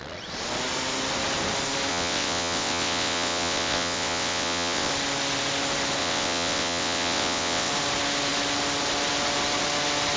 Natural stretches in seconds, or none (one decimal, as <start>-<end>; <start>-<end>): 0.0-1.9; 4.9-6.0; 7.7-10.2